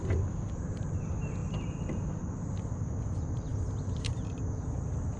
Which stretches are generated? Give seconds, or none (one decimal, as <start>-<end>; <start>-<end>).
none